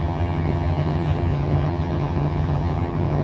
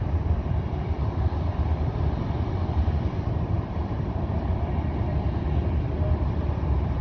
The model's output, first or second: first